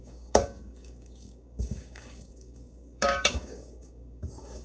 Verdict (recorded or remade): remade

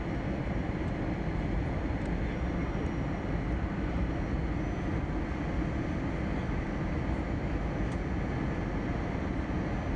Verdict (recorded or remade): recorded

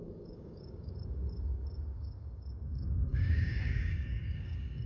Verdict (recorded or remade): remade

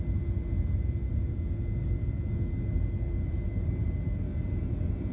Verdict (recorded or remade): recorded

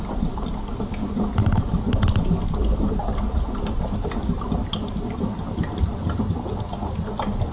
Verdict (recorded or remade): recorded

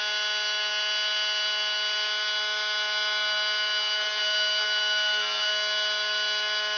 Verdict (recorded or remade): recorded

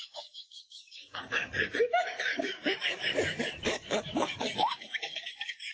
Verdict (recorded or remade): remade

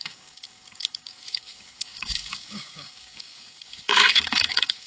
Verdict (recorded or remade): remade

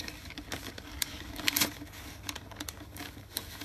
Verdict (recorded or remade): remade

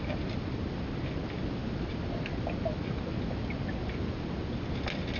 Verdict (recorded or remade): recorded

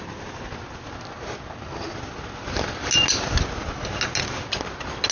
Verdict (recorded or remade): recorded